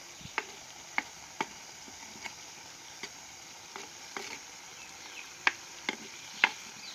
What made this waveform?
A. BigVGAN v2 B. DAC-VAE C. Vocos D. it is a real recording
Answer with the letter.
A